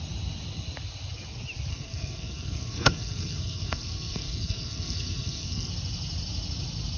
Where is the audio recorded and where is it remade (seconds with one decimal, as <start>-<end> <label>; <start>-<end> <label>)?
0.0-1.7 recorded; 1.7-5.7 remade; 5.7-7.0 recorded